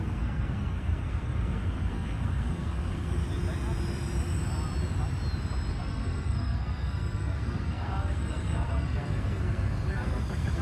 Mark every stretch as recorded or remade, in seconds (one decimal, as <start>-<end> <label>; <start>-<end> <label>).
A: 0.0-3.2 remade; 3.2-5.7 recorded; 5.7-10.6 remade